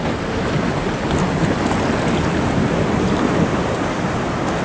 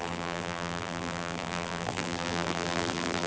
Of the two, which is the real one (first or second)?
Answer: first